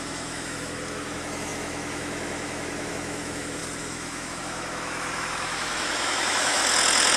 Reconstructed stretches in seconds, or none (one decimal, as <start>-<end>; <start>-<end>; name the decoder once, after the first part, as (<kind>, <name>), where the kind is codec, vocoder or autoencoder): 0.0-6.6 (autoencoder, DAC-VAE)